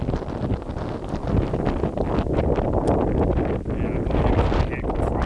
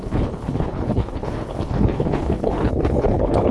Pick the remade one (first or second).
second